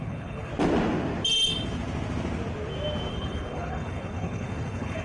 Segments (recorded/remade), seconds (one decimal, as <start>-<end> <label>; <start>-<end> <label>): 0.0-0.5 remade; 0.5-3.1 recorded; 3.1-5.0 remade